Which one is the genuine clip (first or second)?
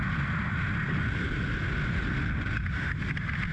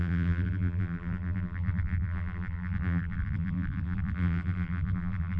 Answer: first